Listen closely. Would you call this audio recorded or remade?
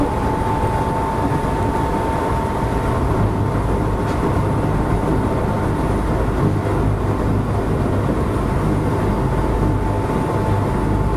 recorded